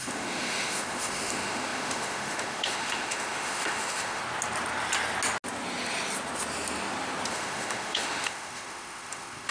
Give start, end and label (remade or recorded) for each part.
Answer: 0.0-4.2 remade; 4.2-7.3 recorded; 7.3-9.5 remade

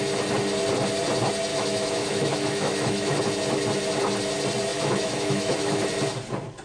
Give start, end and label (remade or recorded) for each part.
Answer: 0.0-1.5 recorded; 1.5-3.2 remade; 3.2-4.7 recorded; 4.7-5.8 remade; 5.8-6.6 recorded

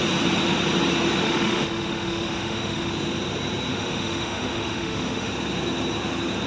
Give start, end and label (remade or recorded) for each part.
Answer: 0.0-1.2 recorded; 1.2-2.9 remade; 2.9-3.7 recorded; 3.7-5.3 remade; 5.3-6.5 recorded

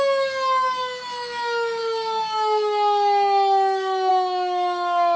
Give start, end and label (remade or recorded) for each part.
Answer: 0.0-5.2 remade

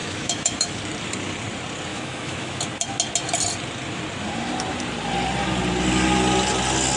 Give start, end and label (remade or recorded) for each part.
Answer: 0.0-0.8 remade; 0.8-1.9 recorded; 1.9-2.6 remade; 2.6-7.0 recorded

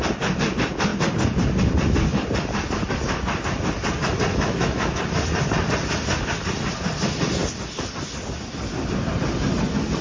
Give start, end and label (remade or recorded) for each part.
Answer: 0.0-4.3 recorded; 4.3-5.0 remade; 5.0-10.0 recorded